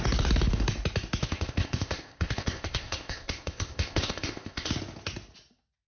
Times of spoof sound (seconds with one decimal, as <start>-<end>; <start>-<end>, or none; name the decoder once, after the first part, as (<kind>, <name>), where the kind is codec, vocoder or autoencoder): 1.2-4.7 (codec, ZipCodec)